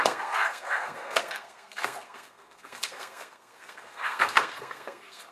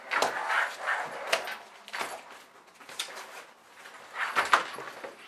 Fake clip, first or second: first